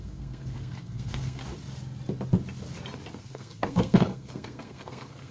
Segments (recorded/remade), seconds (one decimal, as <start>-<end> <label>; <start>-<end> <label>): 0.0-1.4 remade; 1.4-3.1 recorded; 3.1-5.3 remade